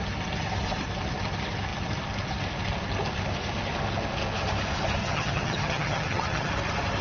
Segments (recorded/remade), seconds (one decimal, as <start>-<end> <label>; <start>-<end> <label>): 0.0-5.0 recorded; 5.0-6.5 remade; 6.5-7.0 recorded